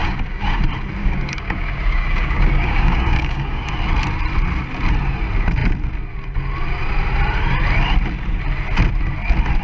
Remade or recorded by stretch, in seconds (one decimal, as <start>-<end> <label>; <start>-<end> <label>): 0.0-0.6 remade; 0.6-1.0 recorded; 1.0-3.7 remade; 3.7-9.6 recorded